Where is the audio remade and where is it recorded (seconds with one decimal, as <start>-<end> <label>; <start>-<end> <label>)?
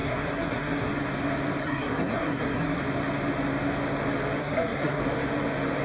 0.0-0.9 remade; 0.9-1.6 recorded; 1.6-2.8 remade; 2.8-4.4 recorded; 4.4-5.0 remade; 5.0-5.8 recorded